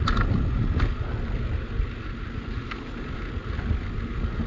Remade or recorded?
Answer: recorded